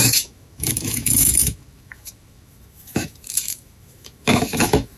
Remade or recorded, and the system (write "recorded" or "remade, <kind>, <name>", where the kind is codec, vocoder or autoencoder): remade, autoencoder, DAC-VAE